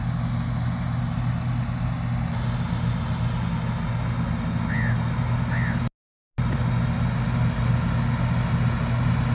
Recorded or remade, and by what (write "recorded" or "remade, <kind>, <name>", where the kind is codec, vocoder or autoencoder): recorded